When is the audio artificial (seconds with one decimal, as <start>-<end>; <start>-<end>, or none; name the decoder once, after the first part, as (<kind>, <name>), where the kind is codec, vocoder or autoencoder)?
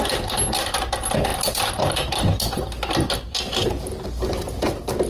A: none